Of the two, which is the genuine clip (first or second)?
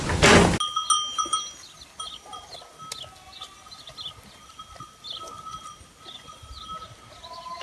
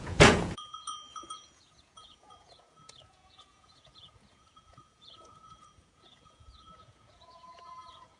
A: first